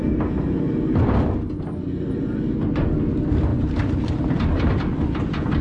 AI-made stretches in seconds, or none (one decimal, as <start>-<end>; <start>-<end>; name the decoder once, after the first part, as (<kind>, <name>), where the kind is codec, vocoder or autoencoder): 3.5-4.1 (vocoder, BigVGAN v2)